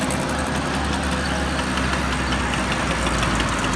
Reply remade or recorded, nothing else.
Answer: recorded